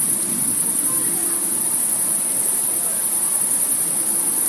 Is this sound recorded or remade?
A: recorded